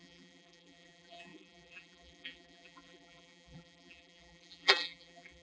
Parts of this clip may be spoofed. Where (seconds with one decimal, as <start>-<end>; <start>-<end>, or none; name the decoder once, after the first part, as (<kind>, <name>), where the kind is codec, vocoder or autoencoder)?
0.0-5.4 (vocoder, BigVGAN v2)